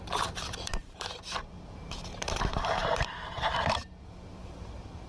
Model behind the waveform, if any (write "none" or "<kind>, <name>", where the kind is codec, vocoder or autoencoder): vocoder, BigVGAN v2